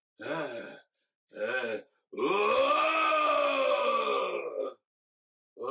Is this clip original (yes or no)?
yes